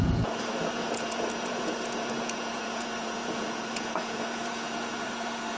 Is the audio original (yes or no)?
no